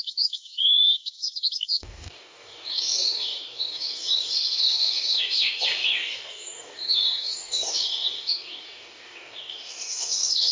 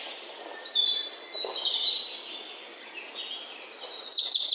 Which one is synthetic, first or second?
first